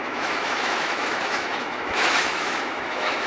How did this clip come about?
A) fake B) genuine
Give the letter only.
A